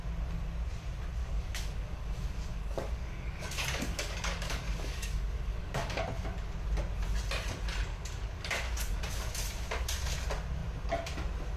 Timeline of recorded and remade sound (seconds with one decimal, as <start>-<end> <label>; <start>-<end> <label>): 0.0-1.2 recorded; 1.2-6.0 remade; 6.0-7.9 recorded; 7.9-9.3 remade; 9.3-11.6 recorded